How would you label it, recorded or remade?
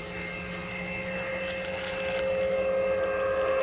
recorded